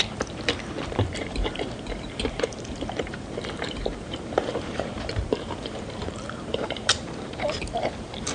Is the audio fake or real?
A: fake